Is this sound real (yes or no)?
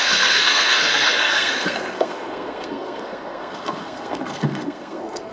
no